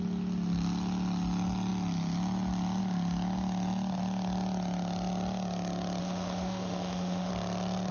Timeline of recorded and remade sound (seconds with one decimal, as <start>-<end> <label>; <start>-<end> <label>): 0.0-6.0 recorded; 6.0-7.3 remade; 7.3-7.9 recorded